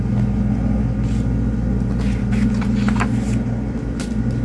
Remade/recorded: recorded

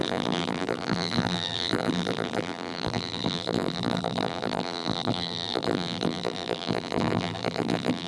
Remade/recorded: remade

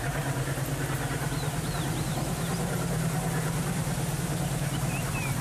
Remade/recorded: remade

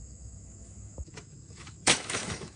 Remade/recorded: remade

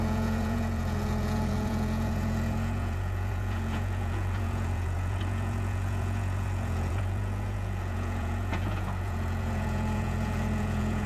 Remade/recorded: remade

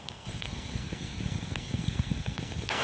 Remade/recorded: remade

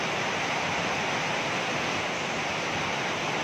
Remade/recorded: recorded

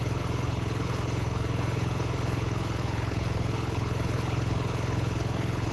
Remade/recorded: remade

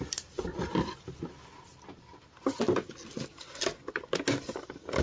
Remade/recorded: recorded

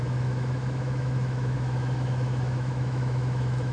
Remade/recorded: remade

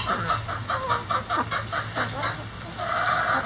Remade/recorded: recorded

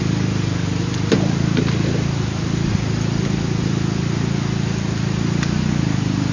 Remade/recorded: recorded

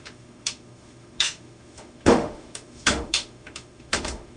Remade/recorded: remade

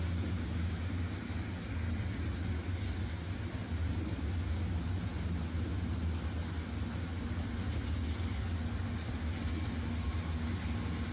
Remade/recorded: recorded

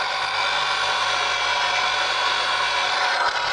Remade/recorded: recorded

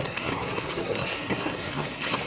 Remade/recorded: remade